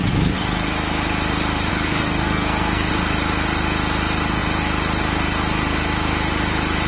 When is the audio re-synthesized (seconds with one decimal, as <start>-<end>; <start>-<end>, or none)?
1.7-2.9